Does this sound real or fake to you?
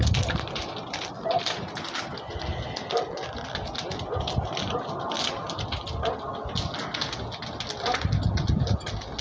real